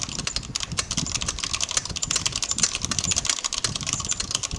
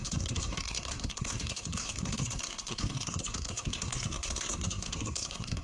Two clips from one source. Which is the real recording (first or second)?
first